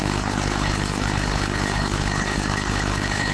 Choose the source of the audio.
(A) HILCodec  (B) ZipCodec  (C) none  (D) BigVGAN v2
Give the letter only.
A